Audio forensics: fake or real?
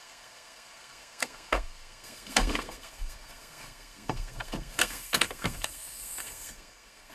fake